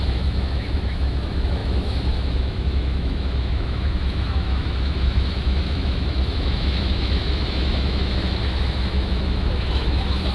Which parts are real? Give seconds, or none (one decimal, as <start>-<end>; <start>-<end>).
none